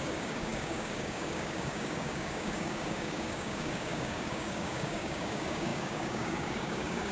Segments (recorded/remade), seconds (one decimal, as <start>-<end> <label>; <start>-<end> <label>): 0.0-7.1 remade